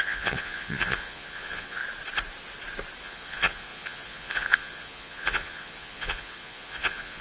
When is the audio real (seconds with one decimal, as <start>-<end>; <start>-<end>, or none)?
1.8-3.0